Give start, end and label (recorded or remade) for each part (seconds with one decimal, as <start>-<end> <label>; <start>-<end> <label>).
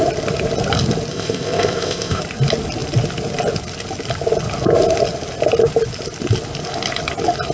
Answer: 0.0-1.1 recorded; 1.1-2.2 remade; 2.2-7.5 recorded